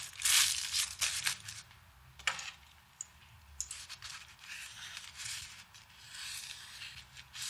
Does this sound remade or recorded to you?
recorded